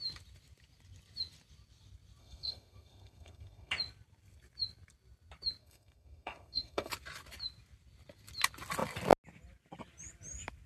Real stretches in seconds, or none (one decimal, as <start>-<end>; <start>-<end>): 0.0-2.2; 3.7-5.6; 6.9-10.7